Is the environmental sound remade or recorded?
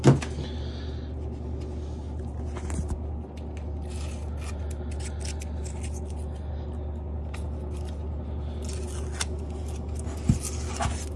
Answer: recorded